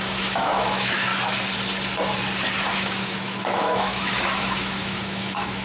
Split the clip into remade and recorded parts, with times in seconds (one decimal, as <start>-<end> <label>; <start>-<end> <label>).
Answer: 0.0-1.1 remade; 1.1-2.7 recorded; 2.7-5.6 remade